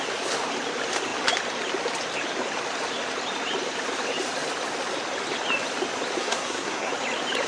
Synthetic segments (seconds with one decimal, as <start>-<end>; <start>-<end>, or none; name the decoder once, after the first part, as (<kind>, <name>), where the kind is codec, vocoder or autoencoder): 6.2-6.9 (codec, SNAC)